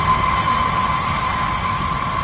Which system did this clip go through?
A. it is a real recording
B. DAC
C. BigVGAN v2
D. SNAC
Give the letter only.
A